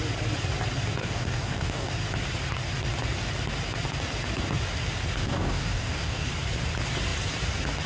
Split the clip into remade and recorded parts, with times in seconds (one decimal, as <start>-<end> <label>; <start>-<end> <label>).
0.0-1.0 recorded; 1.0-1.9 remade; 1.9-5.2 recorded; 5.2-6.3 remade; 6.3-7.9 recorded